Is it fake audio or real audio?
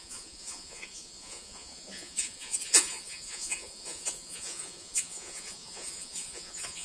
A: fake